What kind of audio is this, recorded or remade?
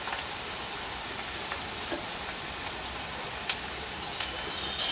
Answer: recorded